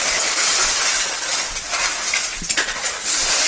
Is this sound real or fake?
real